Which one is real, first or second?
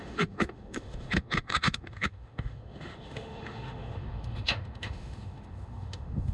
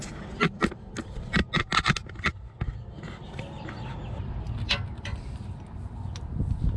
second